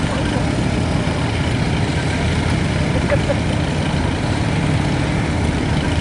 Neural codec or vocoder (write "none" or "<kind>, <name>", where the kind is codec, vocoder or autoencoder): none